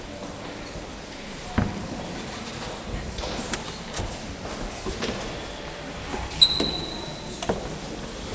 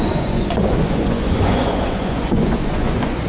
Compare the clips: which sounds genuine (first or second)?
first